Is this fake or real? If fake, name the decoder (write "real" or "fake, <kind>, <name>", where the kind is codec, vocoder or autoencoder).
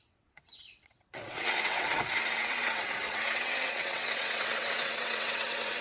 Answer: fake, vocoder, WaveNeXt